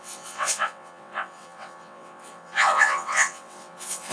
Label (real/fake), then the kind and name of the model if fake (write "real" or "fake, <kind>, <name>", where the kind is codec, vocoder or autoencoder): fake, vocoder, WaveNeXt